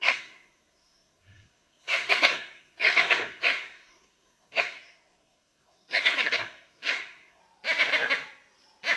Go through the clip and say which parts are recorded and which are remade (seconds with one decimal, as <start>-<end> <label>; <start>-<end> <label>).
0.0-7.4 remade; 7.4-9.0 recorded

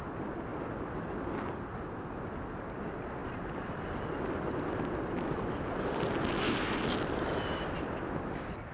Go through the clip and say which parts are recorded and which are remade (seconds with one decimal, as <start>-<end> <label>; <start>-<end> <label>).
0.0-8.7 recorded

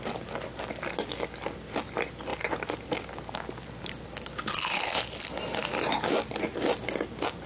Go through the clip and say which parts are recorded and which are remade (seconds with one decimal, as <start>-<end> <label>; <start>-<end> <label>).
0.0-7.5 recorded